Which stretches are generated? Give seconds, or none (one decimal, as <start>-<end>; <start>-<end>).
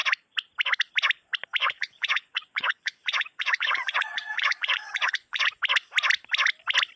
1.6-5.5